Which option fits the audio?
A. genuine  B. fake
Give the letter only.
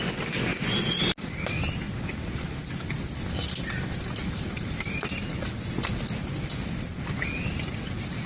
A